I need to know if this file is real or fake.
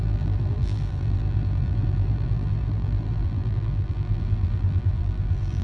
fake